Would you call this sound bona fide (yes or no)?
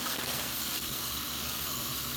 no